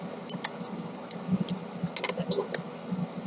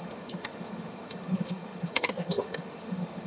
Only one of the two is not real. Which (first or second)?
second